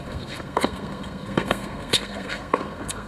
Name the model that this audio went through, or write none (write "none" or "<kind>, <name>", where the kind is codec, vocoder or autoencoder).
codec, SNAC